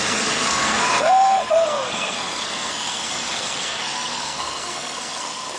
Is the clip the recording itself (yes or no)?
no